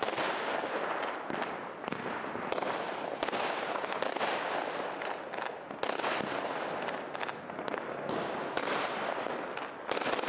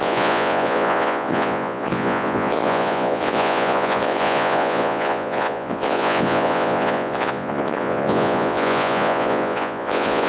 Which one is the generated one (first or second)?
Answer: second